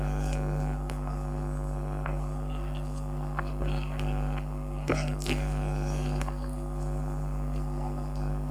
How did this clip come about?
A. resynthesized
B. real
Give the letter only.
A